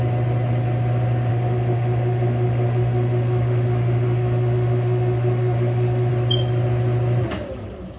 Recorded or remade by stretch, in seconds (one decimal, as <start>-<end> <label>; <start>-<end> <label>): 0.0-1.3 recorded; 1.3-6.1 remade; 6.1-8.0 recorded